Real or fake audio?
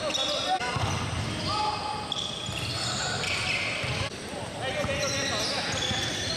real